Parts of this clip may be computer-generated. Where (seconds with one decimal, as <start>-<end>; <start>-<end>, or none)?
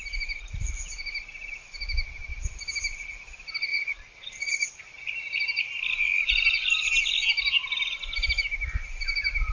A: 3.7-4.5